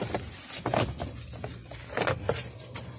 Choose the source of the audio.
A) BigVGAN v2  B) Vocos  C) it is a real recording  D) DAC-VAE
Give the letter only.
C